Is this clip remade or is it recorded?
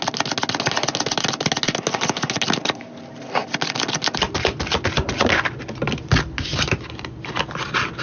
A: recorded